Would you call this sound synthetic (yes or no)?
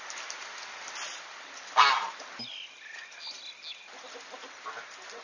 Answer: no